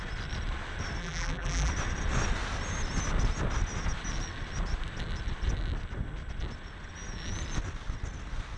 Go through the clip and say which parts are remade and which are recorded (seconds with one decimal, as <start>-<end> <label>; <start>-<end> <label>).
0.0-1.0 recorded; 1.0-1.7 remade; 1.7-8.6 recorded